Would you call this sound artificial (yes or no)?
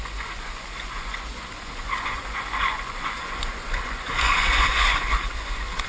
yes